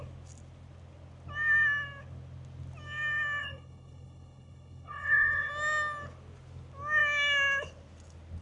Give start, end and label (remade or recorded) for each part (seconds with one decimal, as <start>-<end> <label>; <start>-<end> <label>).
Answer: 0.0-3.4 recorded; 3.4-5.5 remade; 5.5-8.4 recorded